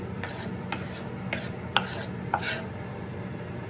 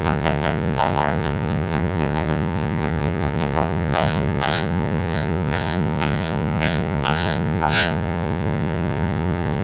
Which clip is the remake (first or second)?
second